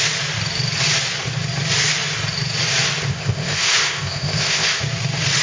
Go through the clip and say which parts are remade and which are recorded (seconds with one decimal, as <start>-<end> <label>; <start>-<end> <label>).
0.0-3.1 recorded; 3.1-4.8 remade; 4.8-5.4 recorded